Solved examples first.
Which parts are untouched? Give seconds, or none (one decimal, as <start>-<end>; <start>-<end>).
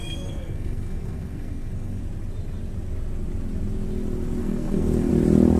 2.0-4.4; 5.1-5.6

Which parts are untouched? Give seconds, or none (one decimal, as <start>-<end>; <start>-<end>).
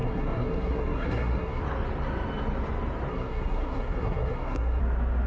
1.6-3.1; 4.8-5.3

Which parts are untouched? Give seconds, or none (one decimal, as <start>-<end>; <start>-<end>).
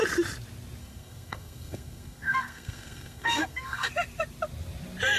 0.0-0.8; 3.9-5.2